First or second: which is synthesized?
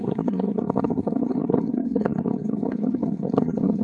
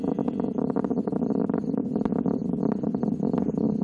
first